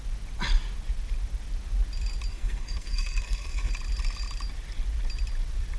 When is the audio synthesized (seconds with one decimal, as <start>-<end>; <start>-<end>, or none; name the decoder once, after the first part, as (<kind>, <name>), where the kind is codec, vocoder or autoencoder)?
2.3-3.7 (codec, SNAC)